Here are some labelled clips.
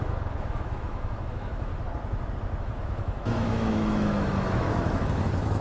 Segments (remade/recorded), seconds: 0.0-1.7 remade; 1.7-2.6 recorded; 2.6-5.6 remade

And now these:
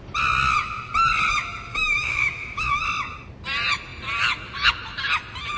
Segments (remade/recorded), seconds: 0.0-1.7 recorded; 1.7-2.8 remade; 2.8-5.6 recorded

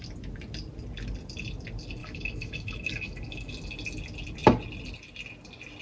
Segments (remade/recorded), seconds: 0.0-2.0 recorded; 2.0-3.5 remade; 3.5-5.8 recorded

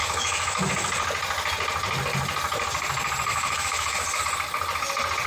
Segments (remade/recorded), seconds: 0.0-0.7 remade; 0.7-3.3 recorded; 3.3-4.2 remade; 4.2-5.3 recorded

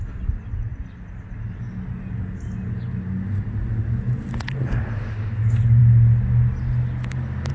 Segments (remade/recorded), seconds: 0.0-7.5 recorded